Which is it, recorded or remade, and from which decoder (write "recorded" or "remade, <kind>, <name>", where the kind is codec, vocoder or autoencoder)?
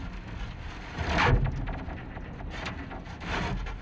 recorded